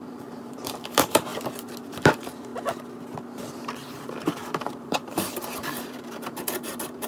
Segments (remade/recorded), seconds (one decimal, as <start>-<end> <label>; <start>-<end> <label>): 0.0-1.3 remade; 1.3-1.9 recorded; 1.9-2.5 remade; 2.5-4.0 recorded; 4.0-7.1 remade